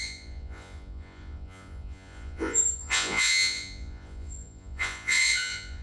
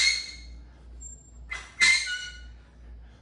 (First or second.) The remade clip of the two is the first